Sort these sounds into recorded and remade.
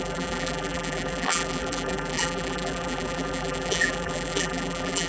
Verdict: remade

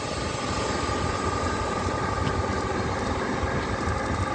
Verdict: recorded